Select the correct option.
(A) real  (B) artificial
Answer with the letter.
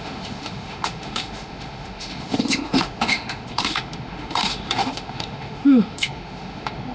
B